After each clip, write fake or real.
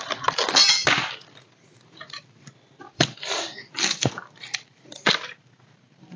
fake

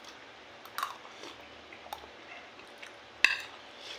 real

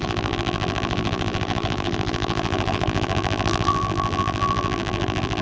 fake